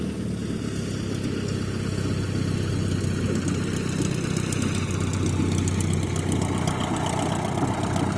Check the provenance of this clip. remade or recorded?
recorded